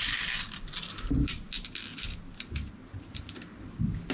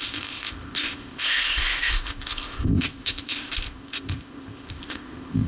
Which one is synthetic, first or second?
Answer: second